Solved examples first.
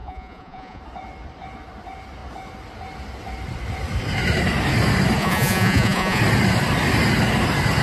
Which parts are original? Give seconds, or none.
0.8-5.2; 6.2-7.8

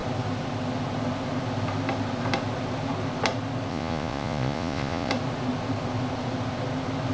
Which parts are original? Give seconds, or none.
0.0-3.7; 5.1-7.1